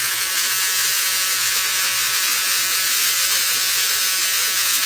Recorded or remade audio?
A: remade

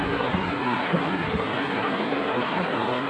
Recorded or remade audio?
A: remade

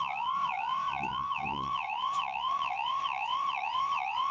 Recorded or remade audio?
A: remade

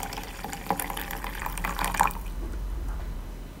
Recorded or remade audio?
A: remade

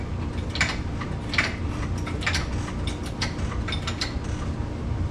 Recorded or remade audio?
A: recorded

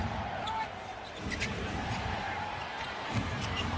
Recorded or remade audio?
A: recorded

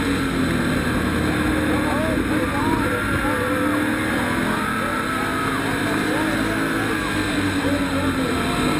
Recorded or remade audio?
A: recorded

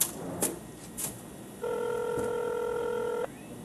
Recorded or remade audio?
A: recorded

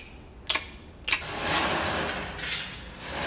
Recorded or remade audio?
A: recorded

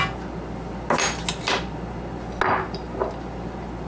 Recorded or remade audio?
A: recorded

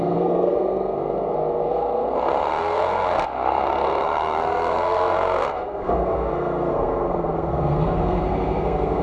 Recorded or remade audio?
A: remade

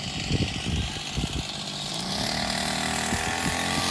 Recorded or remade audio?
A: recorded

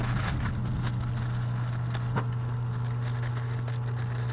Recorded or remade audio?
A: recorded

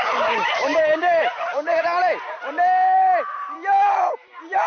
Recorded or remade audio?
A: remade